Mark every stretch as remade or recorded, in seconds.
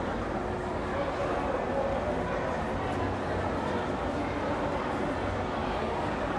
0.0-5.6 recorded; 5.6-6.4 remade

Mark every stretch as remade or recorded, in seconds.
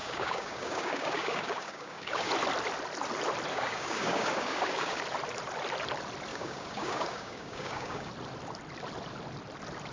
0.0-2.3 remade; 2.3-3.5 recorded; 3.5-5.0 remade; 5.0-6.3 recorded; 6.3-8.1 remade; 8.1-9.9 recorded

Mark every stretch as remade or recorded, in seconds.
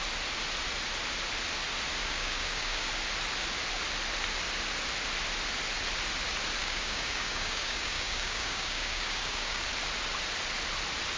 0.0-2.0 recorded; 2.0-2.9 remade; 2.9-6.6 recorded; 6.6-9.6 remade; 9.6-11.2 recorded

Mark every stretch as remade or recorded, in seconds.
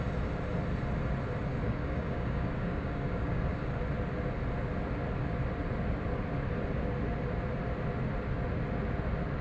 0.0-1.5 recorded; 1.5-3.7 remade; 3.7-9.4 recorded